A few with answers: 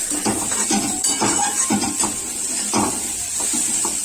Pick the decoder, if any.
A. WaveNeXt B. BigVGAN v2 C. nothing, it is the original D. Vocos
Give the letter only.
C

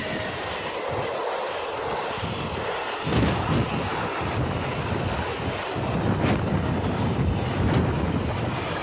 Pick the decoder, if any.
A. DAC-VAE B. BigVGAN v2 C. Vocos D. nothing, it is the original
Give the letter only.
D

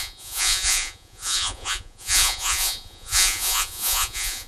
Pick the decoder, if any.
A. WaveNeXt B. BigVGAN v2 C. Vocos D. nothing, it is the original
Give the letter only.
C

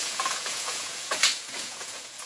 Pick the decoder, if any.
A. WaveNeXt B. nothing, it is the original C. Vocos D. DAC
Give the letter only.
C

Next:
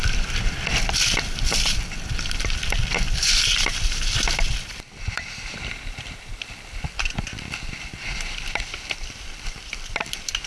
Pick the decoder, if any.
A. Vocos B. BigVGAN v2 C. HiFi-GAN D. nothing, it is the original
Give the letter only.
B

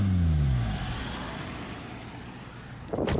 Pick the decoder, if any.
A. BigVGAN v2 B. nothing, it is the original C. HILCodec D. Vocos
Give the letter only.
B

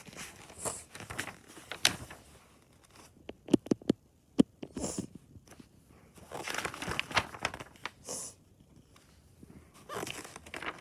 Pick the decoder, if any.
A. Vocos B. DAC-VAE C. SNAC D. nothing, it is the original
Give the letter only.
D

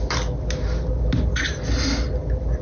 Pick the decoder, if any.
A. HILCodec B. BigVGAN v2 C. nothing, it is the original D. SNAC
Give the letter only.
C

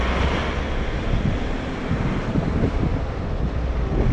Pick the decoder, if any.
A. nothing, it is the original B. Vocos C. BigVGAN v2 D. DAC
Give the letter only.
A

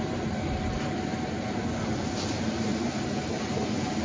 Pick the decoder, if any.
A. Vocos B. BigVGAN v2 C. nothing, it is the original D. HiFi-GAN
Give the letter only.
B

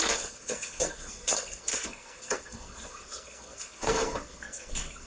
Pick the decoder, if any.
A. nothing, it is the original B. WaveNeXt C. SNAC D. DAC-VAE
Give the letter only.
C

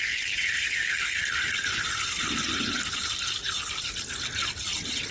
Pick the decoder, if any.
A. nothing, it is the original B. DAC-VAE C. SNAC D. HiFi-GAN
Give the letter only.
A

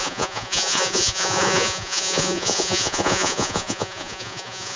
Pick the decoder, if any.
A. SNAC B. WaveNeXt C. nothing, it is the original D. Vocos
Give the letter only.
D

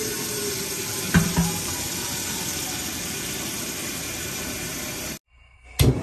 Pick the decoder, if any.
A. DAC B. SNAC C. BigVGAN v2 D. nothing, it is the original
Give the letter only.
D